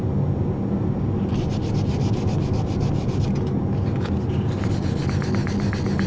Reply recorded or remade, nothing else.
recorded